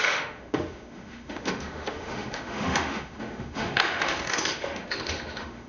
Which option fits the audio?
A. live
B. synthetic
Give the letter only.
B